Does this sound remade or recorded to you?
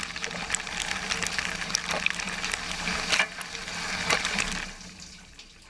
recorded